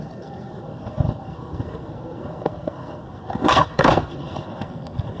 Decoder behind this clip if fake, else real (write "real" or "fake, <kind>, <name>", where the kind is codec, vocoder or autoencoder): fake, codec, SNAC